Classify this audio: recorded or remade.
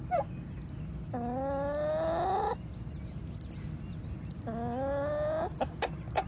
recorded